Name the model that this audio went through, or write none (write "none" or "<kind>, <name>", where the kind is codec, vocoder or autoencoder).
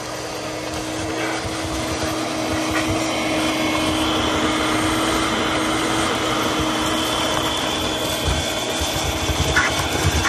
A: none